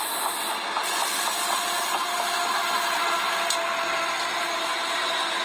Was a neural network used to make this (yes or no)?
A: no